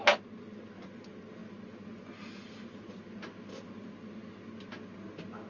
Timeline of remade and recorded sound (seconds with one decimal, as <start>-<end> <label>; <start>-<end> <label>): 0.0-5.5 recorded